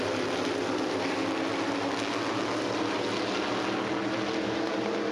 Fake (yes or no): no